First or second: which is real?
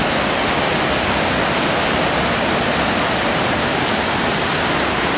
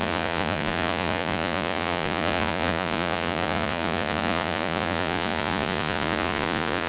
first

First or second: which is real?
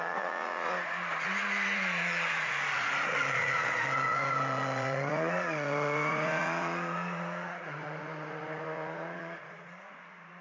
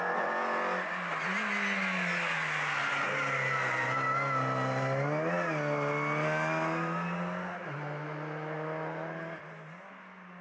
second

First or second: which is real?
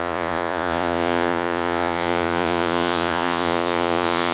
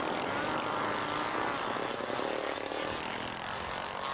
second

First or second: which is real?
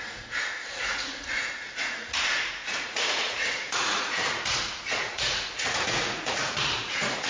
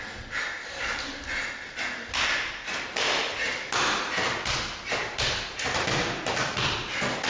second